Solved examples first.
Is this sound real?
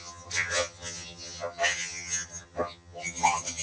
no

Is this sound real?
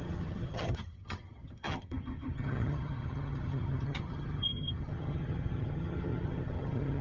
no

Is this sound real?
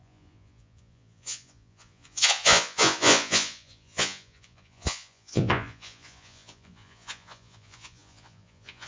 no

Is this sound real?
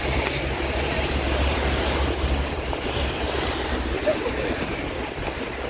no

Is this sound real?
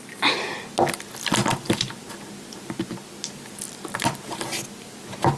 yes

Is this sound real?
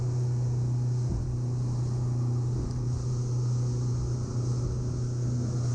yes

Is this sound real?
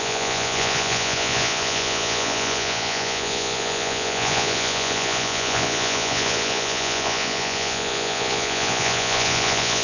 no